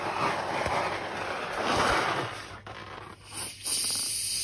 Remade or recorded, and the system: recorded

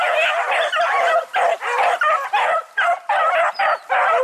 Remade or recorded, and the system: recorded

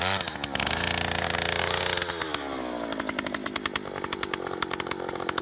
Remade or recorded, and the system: recorded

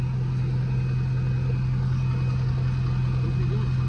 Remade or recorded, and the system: recorded